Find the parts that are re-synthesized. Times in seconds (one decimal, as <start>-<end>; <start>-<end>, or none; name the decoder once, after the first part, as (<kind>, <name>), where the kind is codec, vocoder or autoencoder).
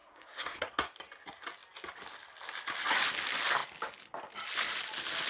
0.0-0.7 (codec, SNAC)